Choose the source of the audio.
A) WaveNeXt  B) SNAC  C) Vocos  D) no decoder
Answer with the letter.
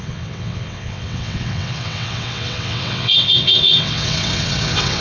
A